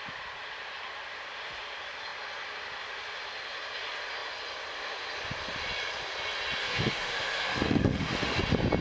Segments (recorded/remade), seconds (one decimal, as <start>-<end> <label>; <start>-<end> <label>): 0.0-6.6 recorded; 6.6-8.4 remade; 8.4-8.8 recorded